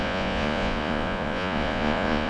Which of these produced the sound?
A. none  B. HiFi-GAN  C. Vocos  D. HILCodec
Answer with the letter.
C